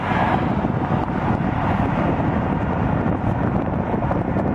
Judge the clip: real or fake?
real